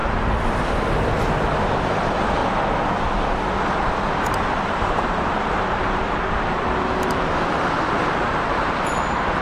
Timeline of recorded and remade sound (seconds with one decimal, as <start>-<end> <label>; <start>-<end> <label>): 0.0-1.8 recorded; 1.8-2.4 remade; 2.4-4.2 recorded; 4.2-9.4 remade